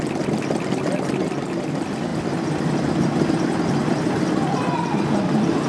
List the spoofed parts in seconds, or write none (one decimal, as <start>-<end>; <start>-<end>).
none